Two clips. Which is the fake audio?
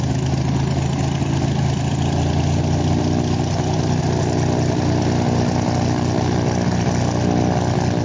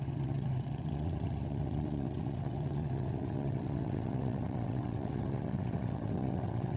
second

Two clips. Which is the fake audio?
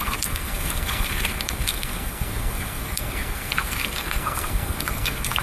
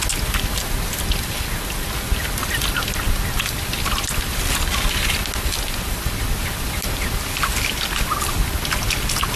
first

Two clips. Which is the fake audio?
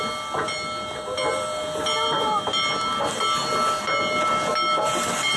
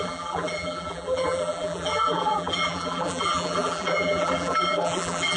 second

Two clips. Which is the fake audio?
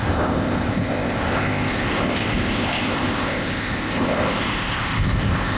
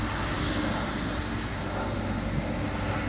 first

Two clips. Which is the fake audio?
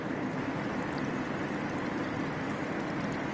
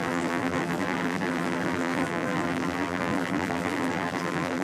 second